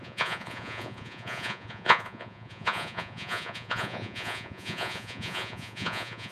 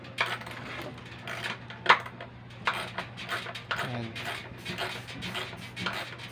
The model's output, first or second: first